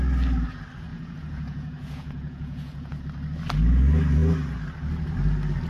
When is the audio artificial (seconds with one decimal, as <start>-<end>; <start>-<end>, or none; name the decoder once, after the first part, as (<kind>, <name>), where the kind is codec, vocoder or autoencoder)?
0.9-3.0 (vocoder, Vocos)